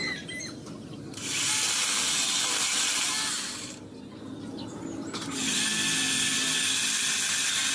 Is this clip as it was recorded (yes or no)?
yes